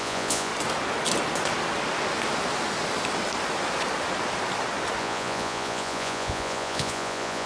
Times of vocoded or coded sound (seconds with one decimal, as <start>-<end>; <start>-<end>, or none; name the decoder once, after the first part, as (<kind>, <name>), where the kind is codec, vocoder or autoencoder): 0.0-0.5 (vocoder, Vocos); 5.0-7.5